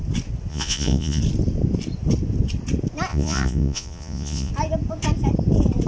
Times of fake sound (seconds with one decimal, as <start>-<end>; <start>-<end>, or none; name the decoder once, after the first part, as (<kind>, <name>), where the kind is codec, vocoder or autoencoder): 0.5-1.2 (vocoder, Vocos); 3.1-4.5